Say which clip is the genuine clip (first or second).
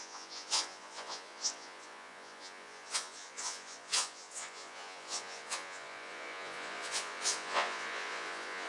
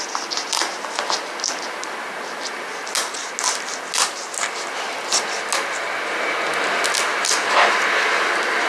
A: second